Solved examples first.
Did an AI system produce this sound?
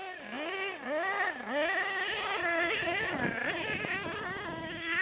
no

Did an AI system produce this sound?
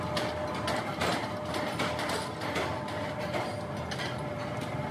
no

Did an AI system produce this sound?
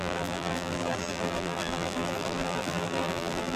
yes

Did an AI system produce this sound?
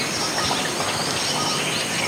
no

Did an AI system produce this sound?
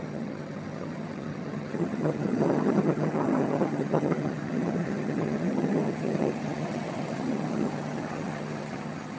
yes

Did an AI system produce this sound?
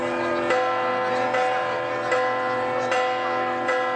no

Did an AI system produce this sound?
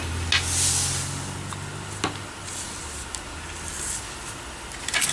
no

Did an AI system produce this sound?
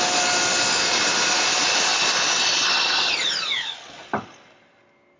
no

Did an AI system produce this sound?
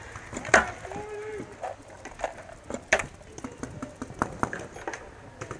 no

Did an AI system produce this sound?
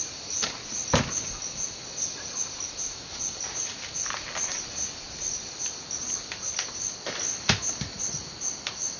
no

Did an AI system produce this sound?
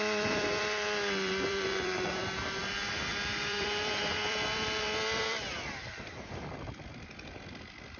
yes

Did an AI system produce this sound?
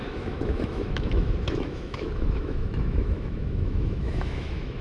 yes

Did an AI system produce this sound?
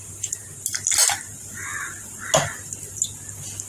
no